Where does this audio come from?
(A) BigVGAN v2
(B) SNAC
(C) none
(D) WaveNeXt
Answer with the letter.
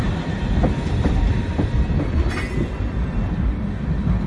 C